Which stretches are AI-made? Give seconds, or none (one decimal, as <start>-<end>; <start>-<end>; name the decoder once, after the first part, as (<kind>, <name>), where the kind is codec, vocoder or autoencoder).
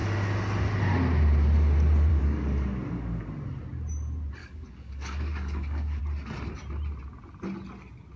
2.1-3.2 (codec, DAC); 4.4-6.0